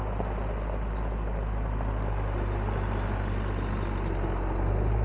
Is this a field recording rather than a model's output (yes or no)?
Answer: yes